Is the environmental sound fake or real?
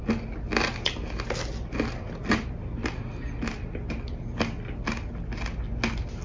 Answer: real